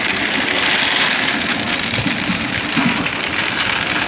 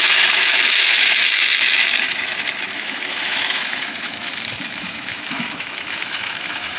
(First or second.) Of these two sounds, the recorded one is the first